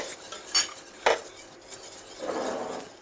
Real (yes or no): yes